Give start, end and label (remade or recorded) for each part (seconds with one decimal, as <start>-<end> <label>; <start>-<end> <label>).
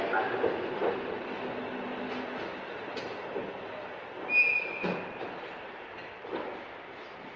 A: 0.0-7.4 recorded